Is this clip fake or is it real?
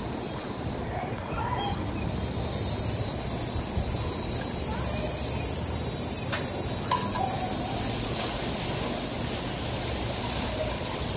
real